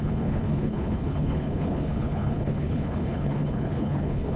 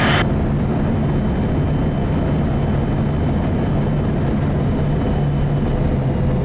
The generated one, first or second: first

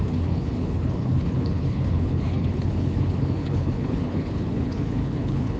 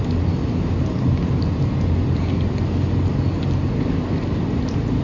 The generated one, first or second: first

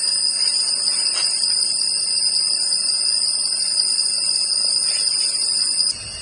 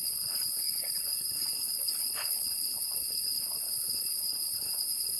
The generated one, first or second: second